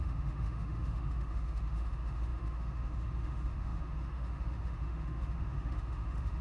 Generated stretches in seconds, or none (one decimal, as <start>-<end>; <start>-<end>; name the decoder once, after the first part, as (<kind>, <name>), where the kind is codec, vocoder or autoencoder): 0.0-6.4 (autoencoder, DAC-VAE)